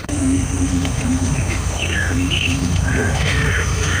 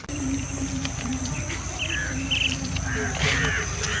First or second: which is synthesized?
first